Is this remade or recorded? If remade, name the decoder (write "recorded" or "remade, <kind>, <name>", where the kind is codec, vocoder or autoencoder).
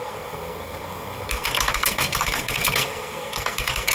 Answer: remade, codec, SNAC